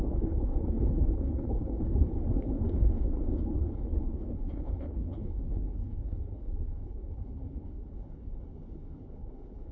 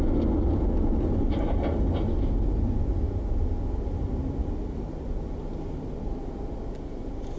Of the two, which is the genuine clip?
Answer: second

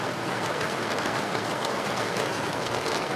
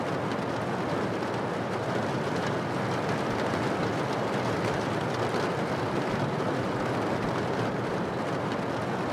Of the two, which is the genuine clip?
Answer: second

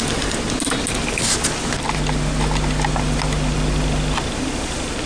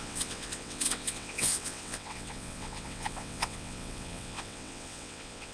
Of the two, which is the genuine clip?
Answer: first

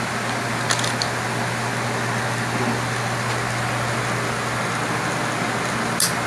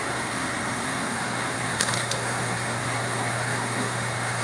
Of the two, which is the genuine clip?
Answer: first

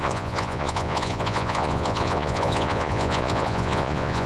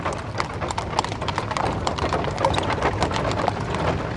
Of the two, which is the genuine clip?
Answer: second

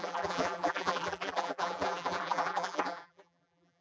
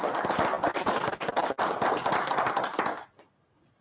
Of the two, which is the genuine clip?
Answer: second